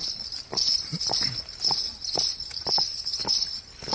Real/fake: real